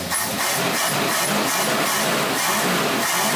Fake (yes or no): no